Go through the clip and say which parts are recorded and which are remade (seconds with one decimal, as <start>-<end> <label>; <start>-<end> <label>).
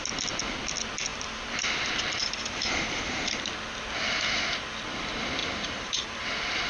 0.0-1.1 recorded; 1.1-1.7 remade; 1.7-2.2 recorded; 2.2-3.3 remade; 3.3-5.4 recorded; 5.4-6.2 remade; 6.2-6.7 recorded